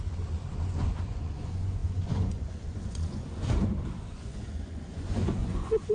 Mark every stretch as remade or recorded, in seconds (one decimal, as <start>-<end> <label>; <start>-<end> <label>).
0.0-5.9 remade